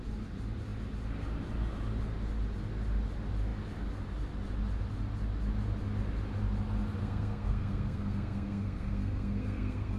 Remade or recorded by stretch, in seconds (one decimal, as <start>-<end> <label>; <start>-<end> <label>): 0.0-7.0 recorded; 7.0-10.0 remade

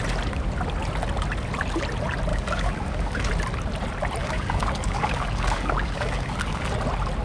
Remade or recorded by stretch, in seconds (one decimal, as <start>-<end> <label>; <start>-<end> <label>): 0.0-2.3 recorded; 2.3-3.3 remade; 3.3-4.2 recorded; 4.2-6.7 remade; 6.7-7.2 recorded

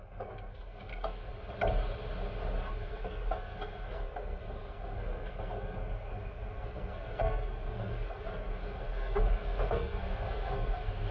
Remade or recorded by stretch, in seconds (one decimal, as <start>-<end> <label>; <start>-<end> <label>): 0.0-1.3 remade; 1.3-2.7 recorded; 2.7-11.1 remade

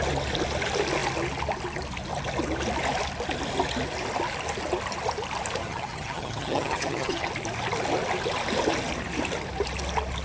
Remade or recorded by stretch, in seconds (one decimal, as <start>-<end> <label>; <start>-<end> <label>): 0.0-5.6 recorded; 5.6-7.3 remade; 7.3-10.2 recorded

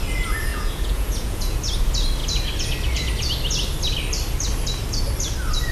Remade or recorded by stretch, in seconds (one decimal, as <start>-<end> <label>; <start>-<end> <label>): 0.0-0.5 recorded; 0.5-1.6 remade; 1.6-5.7 recorded

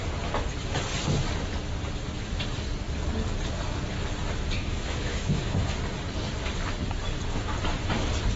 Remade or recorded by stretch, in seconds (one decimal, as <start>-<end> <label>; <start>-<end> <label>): 0.0-4.6 recorded; 4.6-5.6 remade; 5.6-8.4 recorded